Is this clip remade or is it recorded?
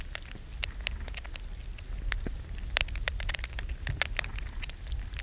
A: recorded